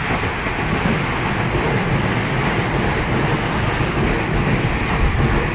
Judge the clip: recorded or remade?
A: recorded